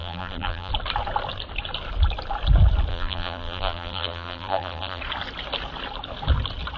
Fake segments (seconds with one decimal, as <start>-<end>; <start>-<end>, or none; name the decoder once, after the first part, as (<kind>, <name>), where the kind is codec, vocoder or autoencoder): 0.0-0.7 (vocoder, BigVGAN v2); 2.9-5.0